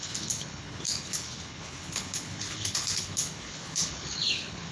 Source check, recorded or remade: remade